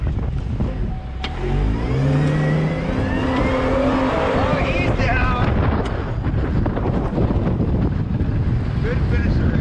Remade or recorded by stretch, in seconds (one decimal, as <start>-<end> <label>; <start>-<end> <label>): 0.0-9.6 recorded